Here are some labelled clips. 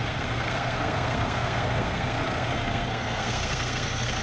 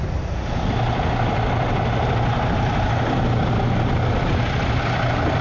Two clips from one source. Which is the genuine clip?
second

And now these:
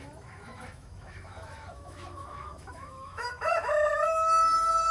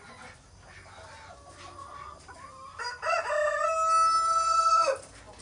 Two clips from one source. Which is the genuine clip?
second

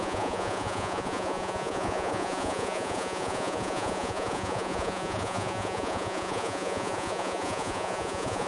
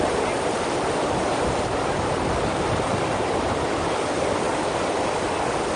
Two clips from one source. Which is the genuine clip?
second